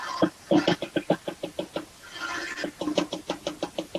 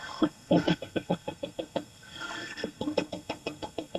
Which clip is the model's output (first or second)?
second